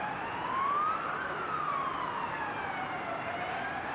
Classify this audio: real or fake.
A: real